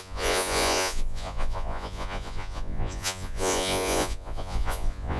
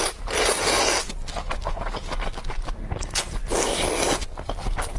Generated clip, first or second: first